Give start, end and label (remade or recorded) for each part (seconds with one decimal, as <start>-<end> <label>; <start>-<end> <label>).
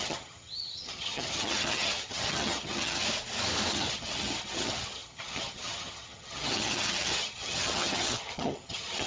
0.0-3.0 remade; 3.0-3.7 recorded; 3.7-9.1 remade